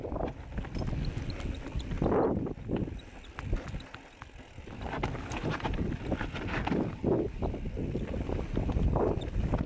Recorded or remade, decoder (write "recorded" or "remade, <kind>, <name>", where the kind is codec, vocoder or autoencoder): recorded